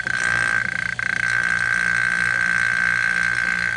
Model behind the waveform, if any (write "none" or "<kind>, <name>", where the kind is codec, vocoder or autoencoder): none